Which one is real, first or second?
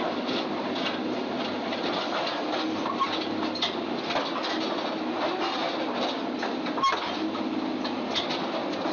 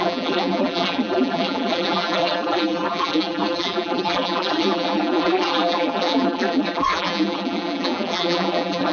first